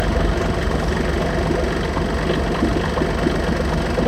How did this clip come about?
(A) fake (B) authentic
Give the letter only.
B